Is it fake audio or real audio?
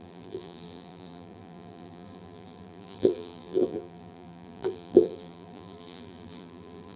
fake